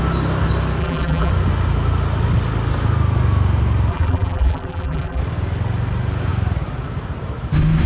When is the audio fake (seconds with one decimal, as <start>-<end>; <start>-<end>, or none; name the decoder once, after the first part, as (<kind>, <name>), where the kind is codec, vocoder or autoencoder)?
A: 0.8-1.3 (vocoder, BigVGAN v2); 3.9-5.2